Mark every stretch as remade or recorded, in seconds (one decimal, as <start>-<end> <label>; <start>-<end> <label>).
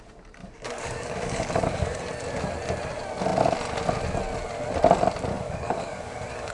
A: 0.0-0.4 recorded; 0.4-2.0 remade; 2.0-5.3 recorded; 5.3-6.5 remade